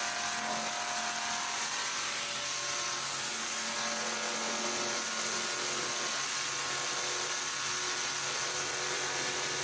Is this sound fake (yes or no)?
no